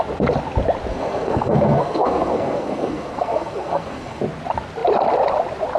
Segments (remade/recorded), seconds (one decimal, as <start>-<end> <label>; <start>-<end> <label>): 0.0-0.9 recorded; 0.9-4.2 remade; 4.2-5.8 recorded